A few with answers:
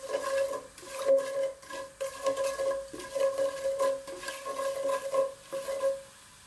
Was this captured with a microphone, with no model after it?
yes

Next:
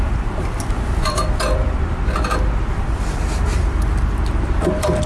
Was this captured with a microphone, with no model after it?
no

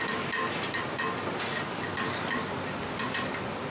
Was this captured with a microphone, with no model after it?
yes